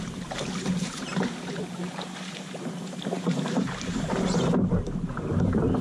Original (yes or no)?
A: no